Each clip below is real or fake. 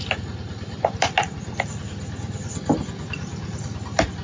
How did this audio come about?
real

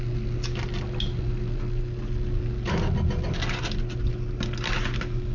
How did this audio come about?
real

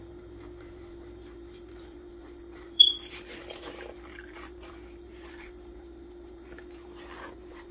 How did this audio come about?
fake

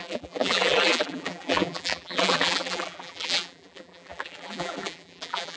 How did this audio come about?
fake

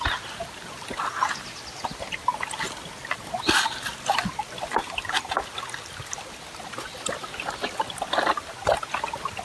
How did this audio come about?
real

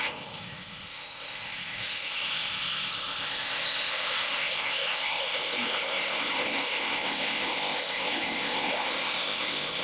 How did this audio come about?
fake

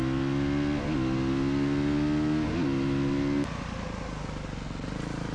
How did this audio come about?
real